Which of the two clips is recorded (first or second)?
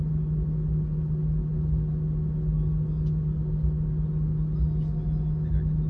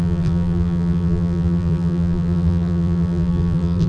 first